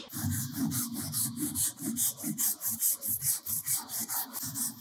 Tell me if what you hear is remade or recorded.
remade